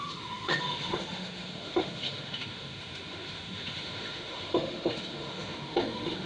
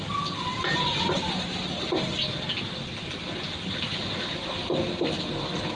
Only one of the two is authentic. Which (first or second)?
second